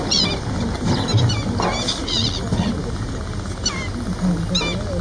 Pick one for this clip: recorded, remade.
recorded